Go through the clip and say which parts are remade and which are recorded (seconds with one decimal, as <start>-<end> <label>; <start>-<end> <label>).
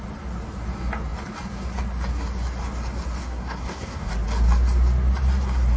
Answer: 0.0-3.2 recorded; 3.2-4.1 remade; 4.1-5.8 recorded